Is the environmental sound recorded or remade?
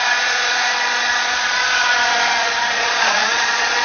remade